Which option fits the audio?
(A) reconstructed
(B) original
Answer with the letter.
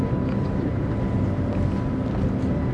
B